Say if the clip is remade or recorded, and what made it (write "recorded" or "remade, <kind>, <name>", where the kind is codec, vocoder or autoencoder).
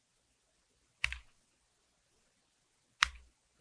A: recorded